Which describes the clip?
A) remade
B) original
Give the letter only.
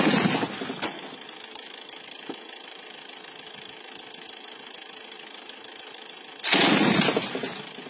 B